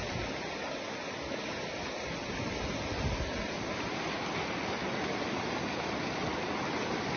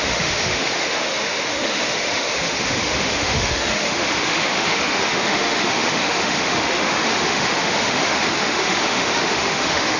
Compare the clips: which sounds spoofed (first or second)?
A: second